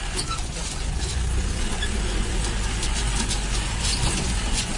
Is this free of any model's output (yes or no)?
no